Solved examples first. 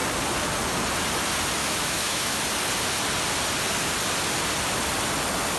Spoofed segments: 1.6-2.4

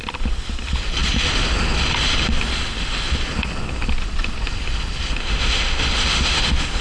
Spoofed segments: 5.2-6.8

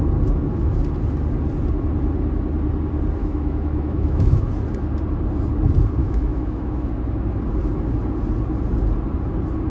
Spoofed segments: 3.2-4.5; 6.0-6.9